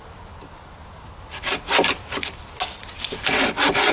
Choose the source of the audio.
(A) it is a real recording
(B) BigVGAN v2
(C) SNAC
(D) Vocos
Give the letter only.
A